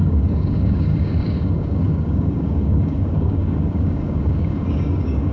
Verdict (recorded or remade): remade